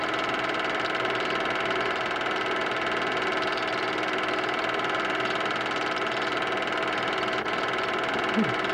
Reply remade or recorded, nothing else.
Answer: recorded